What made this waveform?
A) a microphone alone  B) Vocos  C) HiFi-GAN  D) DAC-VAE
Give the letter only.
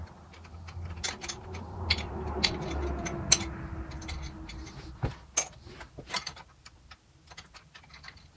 A